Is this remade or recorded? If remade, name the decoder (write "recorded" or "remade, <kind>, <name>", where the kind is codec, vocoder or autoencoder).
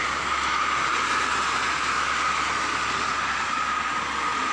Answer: recorded